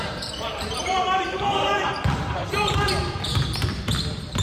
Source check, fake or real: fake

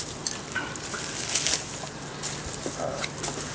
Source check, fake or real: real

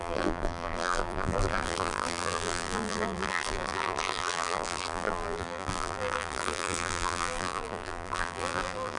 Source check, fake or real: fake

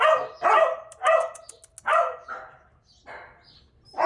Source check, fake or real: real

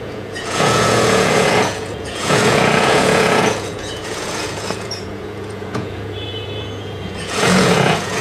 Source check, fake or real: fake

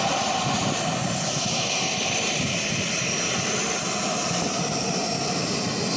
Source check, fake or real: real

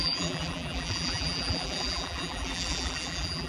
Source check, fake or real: fake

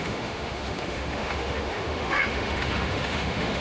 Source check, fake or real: fake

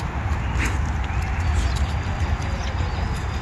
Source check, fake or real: real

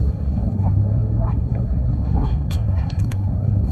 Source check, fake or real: fake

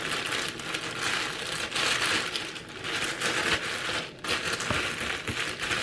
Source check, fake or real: real